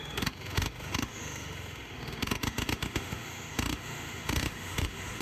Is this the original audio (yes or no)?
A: no